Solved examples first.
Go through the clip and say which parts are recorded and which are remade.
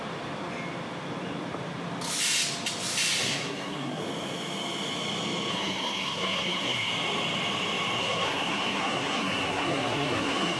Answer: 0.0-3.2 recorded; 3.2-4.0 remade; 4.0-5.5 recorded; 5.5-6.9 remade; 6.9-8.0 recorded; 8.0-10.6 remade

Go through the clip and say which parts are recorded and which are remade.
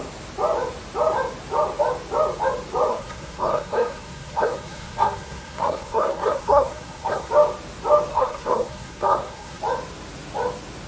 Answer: 0.0-2.9 recorded; 2.9-7.3 remade; 7.3-8.1 recorded; 8.1-9.6 remade; 9.6-10.9 recorded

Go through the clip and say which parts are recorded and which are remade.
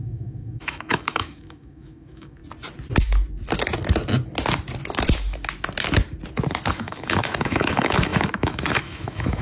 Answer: 0.0-2.4 remade; 2.4-6.7 recorded; 6.7-9.4 remade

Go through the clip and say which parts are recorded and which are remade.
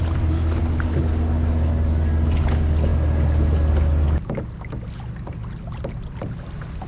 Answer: 0.0-6.9 recorded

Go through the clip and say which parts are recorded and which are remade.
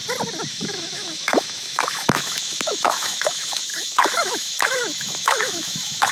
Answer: 0.0-0.5 recorded; 0.5-6.1 remade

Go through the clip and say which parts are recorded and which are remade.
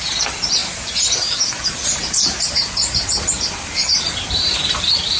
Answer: 0.0-5.2 remade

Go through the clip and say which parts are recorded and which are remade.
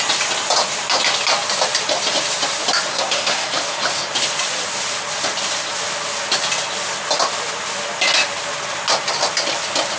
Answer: 0.0-2.9 recorded; 2.9-3.5 remade; 3.5-10.0 recorded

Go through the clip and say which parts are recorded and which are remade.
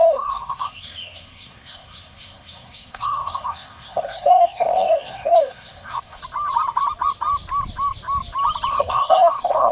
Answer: 0.0-6.2 remade; 6.2-8.7 recorded; 8.7-9.7 remade